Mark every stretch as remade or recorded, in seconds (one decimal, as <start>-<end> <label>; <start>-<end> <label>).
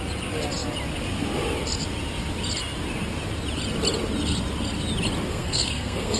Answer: 0.0-5.3 recorded; 5.3-6.2 remade